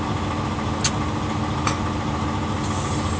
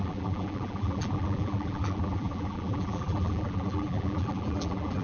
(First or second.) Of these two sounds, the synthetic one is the second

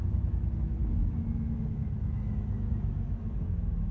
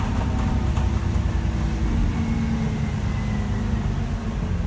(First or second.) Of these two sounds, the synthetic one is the first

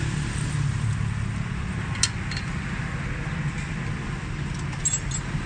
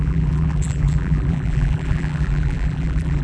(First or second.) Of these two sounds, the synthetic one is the second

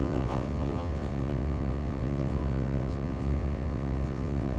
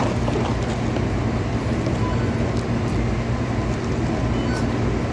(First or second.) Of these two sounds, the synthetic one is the first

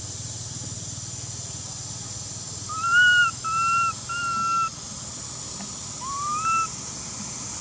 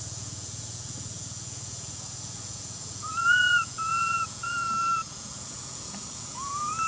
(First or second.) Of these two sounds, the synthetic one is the second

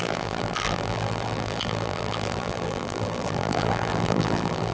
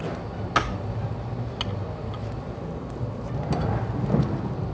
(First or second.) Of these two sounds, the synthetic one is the first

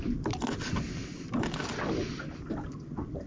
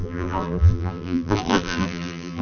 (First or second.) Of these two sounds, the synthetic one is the second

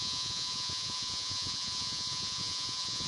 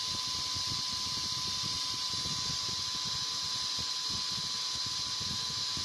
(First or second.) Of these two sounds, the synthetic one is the first